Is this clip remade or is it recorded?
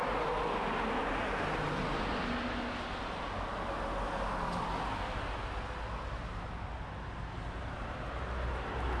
recorded